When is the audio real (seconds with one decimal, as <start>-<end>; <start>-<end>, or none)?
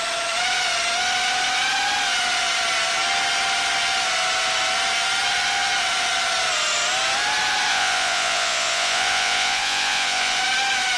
0.0-7.7; 10.4-11.0